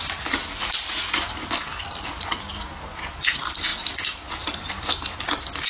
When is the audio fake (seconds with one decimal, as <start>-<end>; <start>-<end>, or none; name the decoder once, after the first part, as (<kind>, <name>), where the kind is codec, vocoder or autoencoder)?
1.7-2.7 (vocoder, BigVGAN v2)